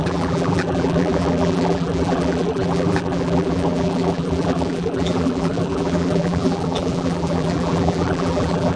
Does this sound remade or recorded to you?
remade